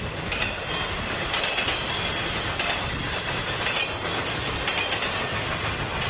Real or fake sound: real